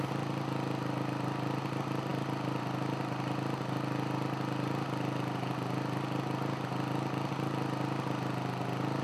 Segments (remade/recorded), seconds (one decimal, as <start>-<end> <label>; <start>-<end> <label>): 0.0-9.0 recorded